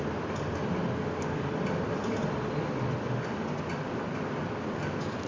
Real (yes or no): yes